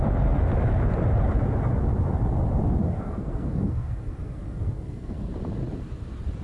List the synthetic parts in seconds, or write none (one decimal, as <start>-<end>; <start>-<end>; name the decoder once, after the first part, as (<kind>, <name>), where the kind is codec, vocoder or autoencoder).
2.8-5.3 (codec, SNAC)